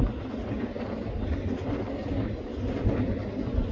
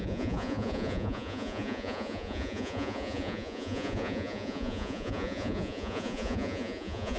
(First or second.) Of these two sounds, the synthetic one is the second